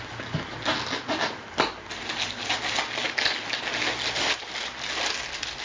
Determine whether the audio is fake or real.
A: real